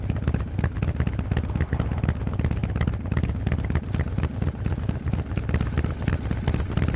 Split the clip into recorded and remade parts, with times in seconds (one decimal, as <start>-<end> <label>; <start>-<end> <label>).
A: 0.0-7.0 recorded